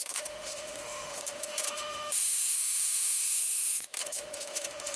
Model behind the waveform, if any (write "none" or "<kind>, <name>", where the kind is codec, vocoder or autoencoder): autoencoder, DAC-VAE